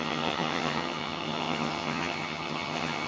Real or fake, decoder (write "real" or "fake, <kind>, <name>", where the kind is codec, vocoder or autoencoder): fake, vocoder, HiFi-GAN